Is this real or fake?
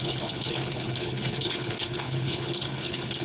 fake